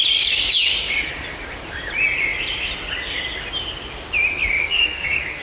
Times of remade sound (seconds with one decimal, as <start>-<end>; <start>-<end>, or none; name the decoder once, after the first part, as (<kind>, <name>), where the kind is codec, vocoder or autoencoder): 4.6-5.4 (codec, SNAC)